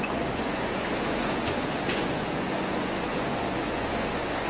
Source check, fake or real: fake